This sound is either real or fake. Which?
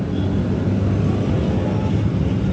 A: real